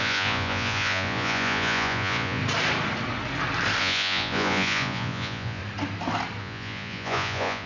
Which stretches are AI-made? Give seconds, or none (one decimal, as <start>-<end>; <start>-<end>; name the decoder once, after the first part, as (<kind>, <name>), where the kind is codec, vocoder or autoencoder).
0.0-2.4 (vocoder, Vocos); 3.8-5.6; 6.4-7.7